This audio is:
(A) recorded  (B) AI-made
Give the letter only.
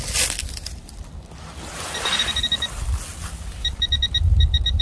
A